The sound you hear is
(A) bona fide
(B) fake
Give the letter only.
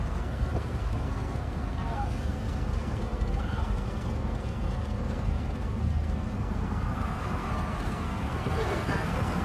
B